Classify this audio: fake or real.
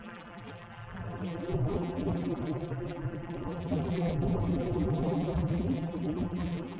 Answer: fake